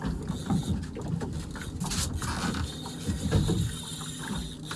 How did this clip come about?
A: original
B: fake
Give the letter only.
A